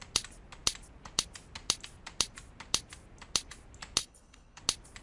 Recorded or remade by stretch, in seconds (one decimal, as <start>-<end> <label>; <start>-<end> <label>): 0.0-4.0 recorded; 4.0-4.6 remade; 4.6-5.0 recorded